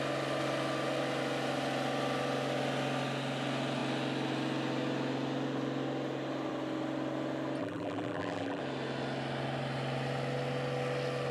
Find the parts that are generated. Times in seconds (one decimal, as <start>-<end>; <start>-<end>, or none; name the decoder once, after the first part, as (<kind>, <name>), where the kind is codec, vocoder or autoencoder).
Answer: 7.6-8.6 (vocoder, BigVGAN v2)

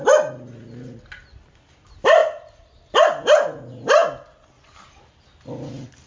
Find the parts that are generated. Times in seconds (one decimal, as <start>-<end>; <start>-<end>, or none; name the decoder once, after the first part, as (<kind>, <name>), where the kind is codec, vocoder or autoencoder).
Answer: none

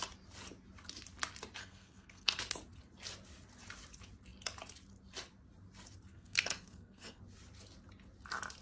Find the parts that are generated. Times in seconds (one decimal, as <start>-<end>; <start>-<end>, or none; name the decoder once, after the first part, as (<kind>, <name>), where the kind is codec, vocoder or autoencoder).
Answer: 1.6-2.4 (codec, SNAC); 6.1-7.2

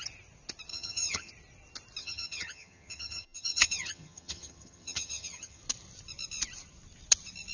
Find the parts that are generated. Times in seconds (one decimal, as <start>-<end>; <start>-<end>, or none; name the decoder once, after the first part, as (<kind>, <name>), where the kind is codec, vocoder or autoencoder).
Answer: 0.7-1.3 (vocoder, HiFi-GAN); 2.0-5.6

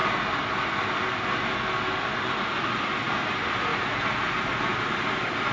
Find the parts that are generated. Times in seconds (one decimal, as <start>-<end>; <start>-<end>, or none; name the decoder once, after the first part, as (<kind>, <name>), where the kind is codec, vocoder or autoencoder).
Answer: 3.7-4.8 (vocoder, BigVGAN v2)